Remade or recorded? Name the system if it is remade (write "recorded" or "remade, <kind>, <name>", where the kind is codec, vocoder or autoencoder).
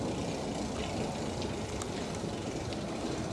recorded